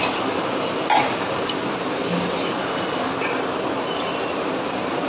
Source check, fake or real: real